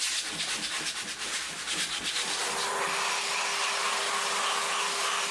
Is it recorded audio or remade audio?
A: recorded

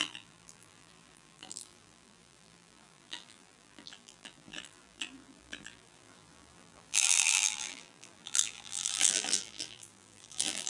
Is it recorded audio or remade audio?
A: remade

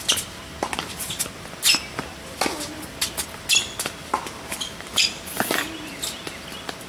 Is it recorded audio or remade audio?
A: recorded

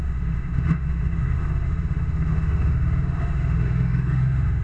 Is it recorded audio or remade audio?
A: remade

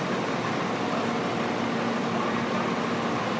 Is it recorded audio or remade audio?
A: recorded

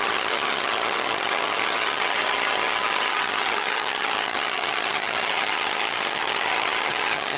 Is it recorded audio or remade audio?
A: remade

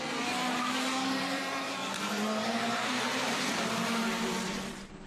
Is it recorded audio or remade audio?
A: remade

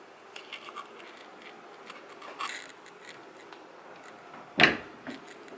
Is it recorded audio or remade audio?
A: recorded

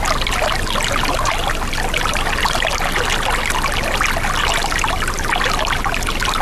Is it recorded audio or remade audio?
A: recorded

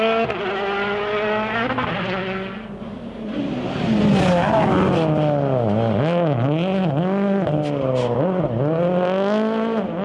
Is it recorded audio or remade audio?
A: recorded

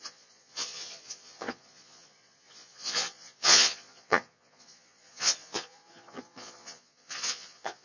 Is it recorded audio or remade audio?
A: remade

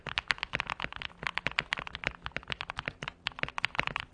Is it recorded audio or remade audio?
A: recorded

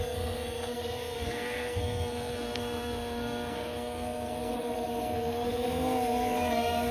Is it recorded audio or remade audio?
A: remade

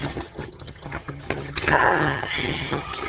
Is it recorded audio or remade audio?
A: remade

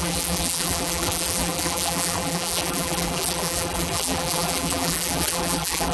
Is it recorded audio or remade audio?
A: remade